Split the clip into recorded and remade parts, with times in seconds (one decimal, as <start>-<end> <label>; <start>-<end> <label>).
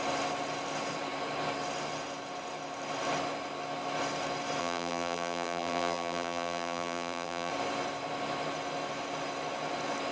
0.0-4.6 recorded; 4.6-7.5 remade; 7.5-10.1 recorded